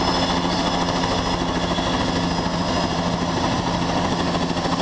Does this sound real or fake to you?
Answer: real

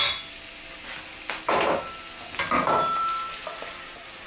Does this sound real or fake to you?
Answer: real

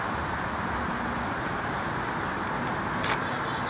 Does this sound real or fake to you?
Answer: real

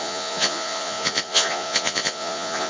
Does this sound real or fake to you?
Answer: fake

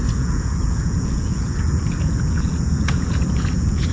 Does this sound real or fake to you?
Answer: fake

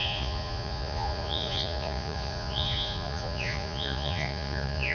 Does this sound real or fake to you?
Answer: fake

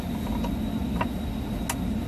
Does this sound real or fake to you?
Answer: real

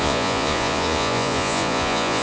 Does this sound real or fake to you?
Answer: fake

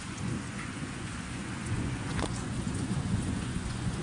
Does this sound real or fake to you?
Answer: fake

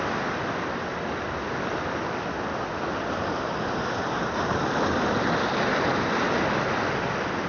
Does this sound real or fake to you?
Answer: real